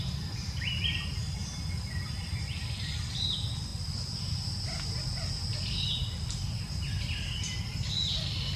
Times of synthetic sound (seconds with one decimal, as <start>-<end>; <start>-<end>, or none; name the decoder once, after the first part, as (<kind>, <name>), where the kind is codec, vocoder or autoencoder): 0.0-3.7 (vocoder, BigVGAN v2); 7.6-8.6

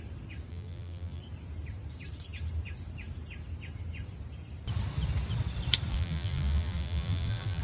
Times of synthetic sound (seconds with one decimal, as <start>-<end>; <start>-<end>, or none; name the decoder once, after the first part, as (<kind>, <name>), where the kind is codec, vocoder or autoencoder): 0.5-1.2 (vocoder, BigVGAN v2); 5.9-7.6

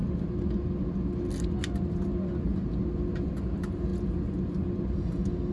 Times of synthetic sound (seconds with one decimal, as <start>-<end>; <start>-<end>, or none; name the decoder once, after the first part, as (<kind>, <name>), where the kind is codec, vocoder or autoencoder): none

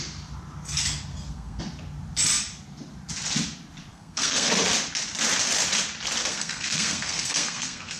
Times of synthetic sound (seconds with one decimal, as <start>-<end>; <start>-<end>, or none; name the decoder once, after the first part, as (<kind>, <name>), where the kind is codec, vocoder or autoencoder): 1.1-1.6 (codec, SNAC); 3.9-4.5; 6.3-8.0

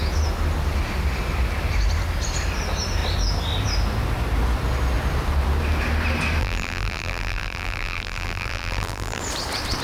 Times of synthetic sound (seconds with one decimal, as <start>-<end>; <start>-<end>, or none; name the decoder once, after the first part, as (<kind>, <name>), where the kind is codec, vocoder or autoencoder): 6.4-9.2 (vocoder, BigVGAN v2)

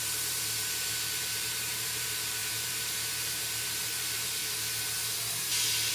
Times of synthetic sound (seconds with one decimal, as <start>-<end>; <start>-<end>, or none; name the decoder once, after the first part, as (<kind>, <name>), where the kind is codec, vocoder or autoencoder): 0.0-4.4 (vocoder, BigVGAN v2)